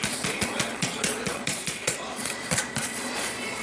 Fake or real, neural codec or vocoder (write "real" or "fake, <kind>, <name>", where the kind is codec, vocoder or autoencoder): fake, vocoder, Vocos